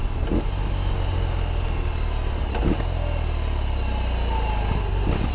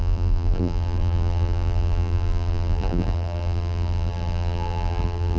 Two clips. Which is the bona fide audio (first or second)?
first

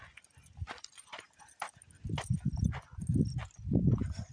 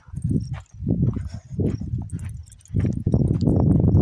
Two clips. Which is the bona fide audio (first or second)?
second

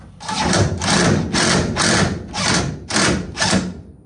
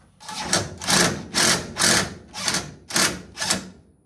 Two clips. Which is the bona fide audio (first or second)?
second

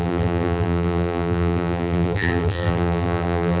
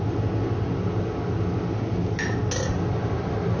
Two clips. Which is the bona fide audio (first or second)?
second